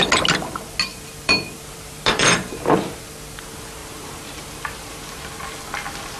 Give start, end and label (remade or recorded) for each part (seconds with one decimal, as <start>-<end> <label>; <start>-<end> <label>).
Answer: 0.0-0.9 recorded; 0.9-3.0 remade; 3.0-3.8 recorded; 3.8-5.2 remade; 5.2-6.2 recorded